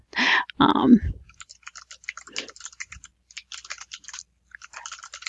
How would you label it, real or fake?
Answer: real